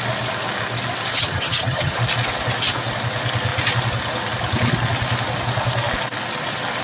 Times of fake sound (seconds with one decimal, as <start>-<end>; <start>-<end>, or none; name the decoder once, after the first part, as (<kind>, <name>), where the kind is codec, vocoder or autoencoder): 1.1-2.0 (vocoder, HiFi-GAN)